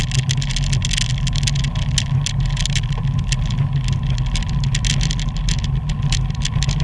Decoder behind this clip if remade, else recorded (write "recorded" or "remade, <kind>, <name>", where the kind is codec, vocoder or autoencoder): recorded